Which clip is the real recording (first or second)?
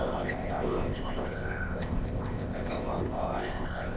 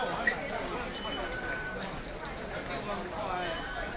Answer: second